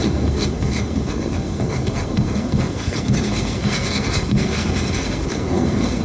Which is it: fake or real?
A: fake